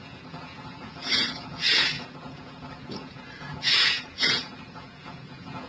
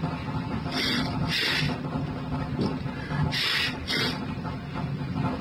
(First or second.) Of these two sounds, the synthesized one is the first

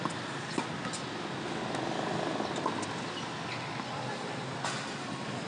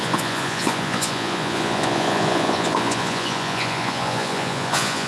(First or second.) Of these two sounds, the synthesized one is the second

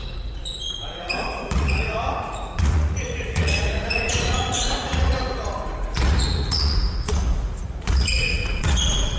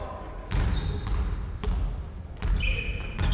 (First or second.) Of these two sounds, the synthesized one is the first